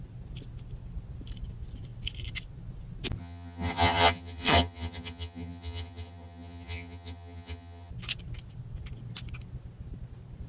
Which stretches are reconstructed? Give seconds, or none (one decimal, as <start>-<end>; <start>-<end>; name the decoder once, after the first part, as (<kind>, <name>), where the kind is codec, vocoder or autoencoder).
3.2-7.9 (vocoder, HiFi-GAN)